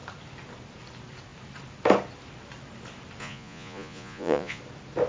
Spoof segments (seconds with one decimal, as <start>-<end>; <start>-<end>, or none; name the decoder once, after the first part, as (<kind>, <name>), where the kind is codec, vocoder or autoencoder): 3.2-4.6 (vocoder, Vocos)